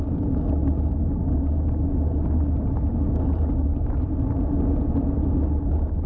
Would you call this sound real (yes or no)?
yes